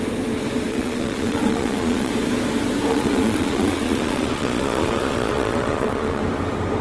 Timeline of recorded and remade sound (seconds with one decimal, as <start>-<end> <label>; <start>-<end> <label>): 0.0-0.7 recorded; 0.7-2.1 remade; 2.1-2.9 recorded; 2.9-6.2 remade; 6.2-6.8 recorded